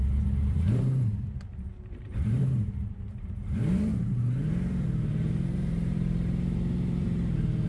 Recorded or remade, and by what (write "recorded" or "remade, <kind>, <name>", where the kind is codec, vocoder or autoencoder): remade, vocoder, BigVGAN v2